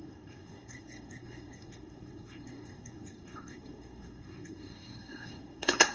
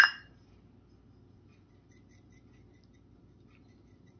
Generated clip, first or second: first